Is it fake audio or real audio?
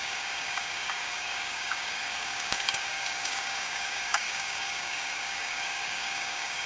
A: fake